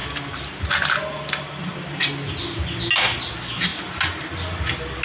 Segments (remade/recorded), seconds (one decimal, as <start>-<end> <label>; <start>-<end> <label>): 0.0-5.0 recorded